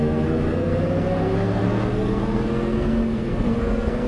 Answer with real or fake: fake